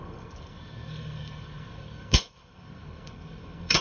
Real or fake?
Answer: fake